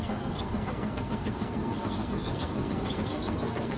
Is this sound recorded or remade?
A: remade